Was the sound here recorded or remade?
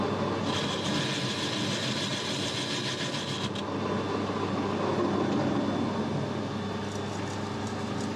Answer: recorded